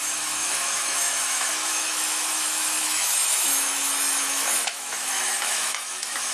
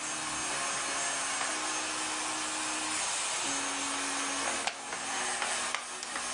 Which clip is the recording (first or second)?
second